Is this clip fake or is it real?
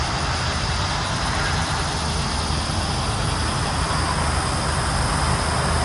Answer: real